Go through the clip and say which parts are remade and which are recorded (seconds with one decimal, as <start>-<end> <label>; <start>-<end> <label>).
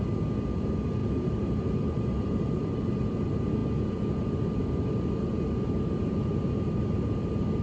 0.0-1.0 recorded; 1.0-3.2 remade; 3.2-7.6 recorded